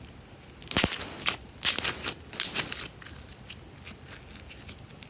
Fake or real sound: real